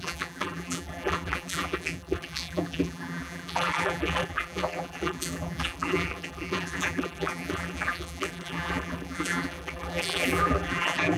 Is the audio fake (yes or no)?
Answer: yes